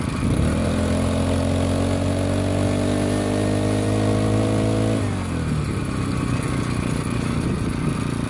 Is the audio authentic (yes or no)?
yes